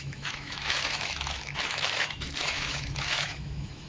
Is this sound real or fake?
fake